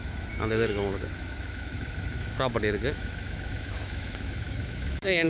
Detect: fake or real fake